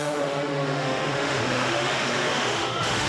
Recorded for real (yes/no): no